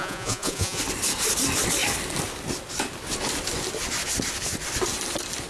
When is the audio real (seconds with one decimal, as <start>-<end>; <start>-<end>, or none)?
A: 0.8-5.5